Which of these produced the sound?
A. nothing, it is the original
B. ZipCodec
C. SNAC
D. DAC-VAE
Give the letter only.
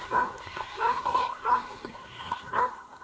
C